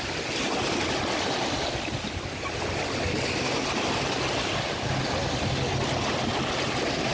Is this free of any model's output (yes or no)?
yes